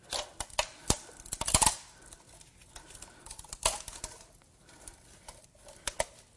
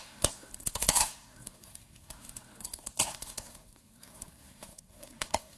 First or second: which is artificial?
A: second